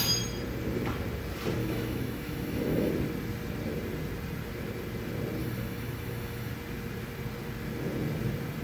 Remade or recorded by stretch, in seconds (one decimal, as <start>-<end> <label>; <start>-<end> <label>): 0.0-1.6 recorded; 1.6-2.9 remade; 2.9-5.4 recorded; 5.4-6.5 remade; 6.5-8.6 recorded